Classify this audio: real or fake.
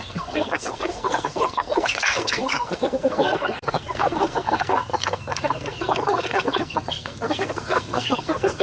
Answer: fake